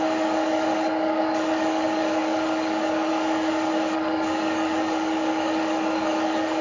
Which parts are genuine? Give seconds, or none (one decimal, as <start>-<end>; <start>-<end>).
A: none